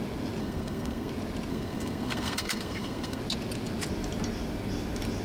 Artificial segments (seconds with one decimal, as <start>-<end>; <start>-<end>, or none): 0.4-1.1; 1.5-3.2